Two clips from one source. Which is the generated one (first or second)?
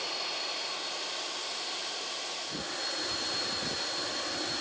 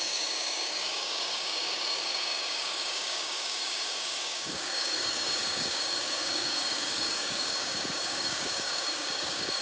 second